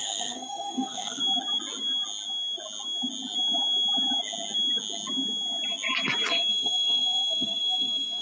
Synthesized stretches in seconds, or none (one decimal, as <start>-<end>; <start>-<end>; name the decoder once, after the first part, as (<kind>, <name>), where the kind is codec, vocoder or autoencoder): 0.0-1.2 (codec, SNAC); 6.5-8.2